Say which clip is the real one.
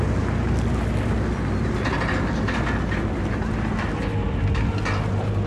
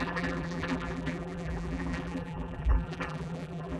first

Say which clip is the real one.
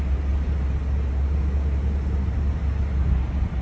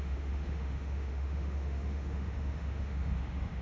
first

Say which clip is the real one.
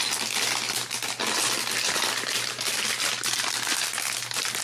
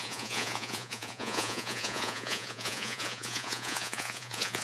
first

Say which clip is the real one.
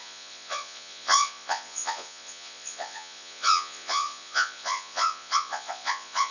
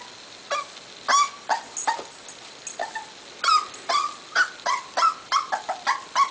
second